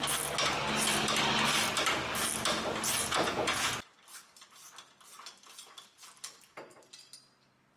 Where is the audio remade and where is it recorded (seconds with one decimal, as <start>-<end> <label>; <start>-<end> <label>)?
0.0-3.0 recorded; 3.0-3.7 remade; 3.7-7.8 recorded